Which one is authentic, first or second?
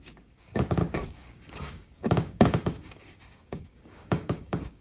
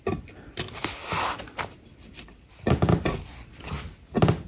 second